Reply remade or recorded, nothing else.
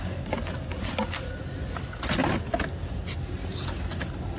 recorded